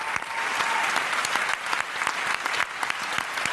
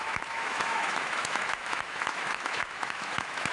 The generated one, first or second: second